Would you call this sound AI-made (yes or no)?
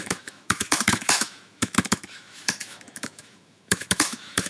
yes